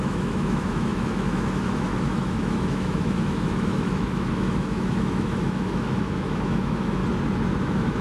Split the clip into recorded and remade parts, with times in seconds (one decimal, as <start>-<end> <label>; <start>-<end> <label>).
0.0-7.0 remade; 7.0-7.6 recorded; 7.6-8.0 remade